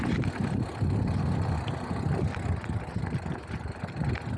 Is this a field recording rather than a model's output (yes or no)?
yes